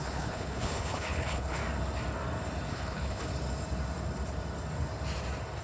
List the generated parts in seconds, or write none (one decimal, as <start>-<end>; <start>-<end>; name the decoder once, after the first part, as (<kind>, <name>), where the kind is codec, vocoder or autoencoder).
0.0-1.6 (codec, HILCodec); 2.7-3.3